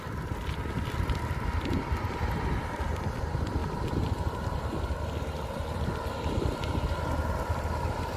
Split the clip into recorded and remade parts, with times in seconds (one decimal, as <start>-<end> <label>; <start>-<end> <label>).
0.0-8.2 recorded